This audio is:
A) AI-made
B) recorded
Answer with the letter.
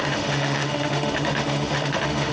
A